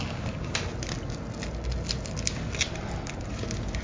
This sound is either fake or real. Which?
real